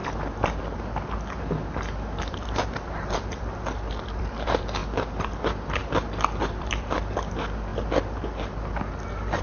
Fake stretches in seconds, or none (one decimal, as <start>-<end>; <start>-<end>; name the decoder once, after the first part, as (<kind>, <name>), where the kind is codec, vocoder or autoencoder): 2.3-5.8 (vocoder, BigVGAN v2); 6.6-7.7

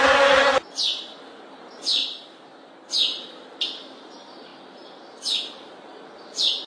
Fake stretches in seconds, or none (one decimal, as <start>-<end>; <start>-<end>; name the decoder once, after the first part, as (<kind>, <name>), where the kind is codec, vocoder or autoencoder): 0.0-0.6 (vocoder, BigVGAN v2); 1.6-2.0; 2.9-4.5; 5.5-6.7

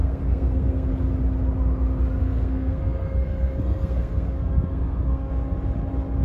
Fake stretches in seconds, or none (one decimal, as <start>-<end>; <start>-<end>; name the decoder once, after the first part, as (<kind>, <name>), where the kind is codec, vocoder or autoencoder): 0.0-0.9 (codec, SNAC); 2.2-5.3

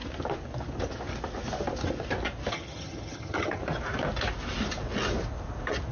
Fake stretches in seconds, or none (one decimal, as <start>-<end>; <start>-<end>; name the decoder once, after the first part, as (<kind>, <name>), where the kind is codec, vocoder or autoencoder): 2.5-3.6 (vocoder, HiFi-GAN)

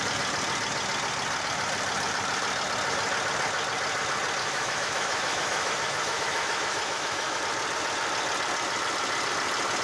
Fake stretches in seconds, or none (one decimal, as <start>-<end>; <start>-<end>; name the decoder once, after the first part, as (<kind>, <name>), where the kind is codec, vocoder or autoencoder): 4.4-7.4 (autoencoder, DAC-VAE)